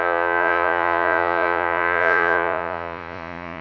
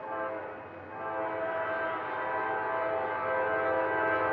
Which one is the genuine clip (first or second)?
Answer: second